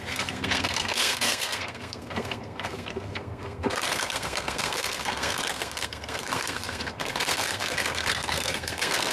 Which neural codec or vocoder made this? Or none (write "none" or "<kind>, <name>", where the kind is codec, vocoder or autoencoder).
codec, SNAC